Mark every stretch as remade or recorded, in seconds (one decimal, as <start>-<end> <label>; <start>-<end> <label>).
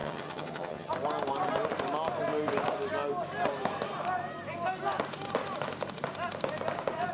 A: 0.0-0.9 remade; 0.9-7.1 recorded